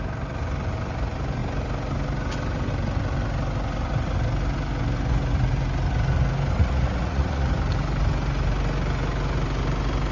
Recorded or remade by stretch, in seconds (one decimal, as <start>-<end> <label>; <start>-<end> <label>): 0.0-6.6 recorded; 6.6-7.5 remade; 7.5-10.1 recorded

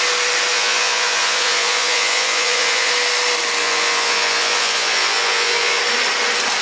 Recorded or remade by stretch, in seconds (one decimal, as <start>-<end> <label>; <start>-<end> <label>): 0.0-0.5 recorded; 0.5-2.9 remade; 2.9-3.6 recorded; 3.6-5.8 remade; 5.8-6.6 recorded